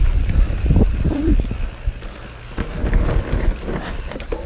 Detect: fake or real real